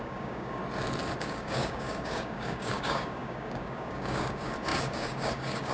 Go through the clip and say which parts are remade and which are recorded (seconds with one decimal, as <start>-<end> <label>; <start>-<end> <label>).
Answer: 0.0-0.6 remade; 0.6-1.2 recorded; 1.2-5.7 remade